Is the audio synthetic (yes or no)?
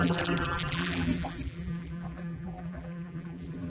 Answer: yes